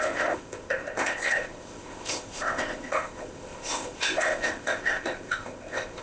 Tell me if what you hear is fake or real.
fake